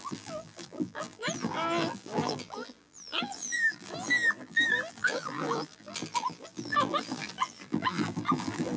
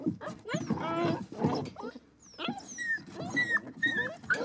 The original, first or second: second